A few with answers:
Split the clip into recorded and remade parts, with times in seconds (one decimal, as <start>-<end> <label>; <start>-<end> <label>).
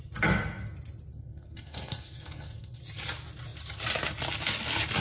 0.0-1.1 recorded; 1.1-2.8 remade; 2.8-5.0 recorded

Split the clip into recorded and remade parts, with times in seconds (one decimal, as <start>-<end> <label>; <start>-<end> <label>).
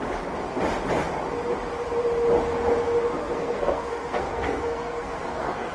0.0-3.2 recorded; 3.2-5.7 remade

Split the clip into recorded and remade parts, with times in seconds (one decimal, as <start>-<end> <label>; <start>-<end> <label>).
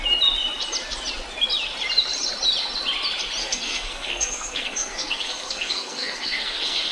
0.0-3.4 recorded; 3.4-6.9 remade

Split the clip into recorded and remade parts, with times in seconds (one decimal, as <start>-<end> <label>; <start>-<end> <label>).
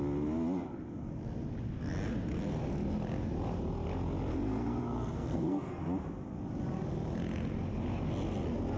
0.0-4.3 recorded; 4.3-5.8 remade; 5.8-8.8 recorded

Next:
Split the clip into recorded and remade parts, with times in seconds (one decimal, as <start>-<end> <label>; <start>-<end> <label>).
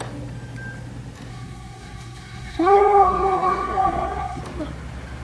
0.0-1.3 recorded; 1.3-4.4 remade; 4.4-5.2 recorded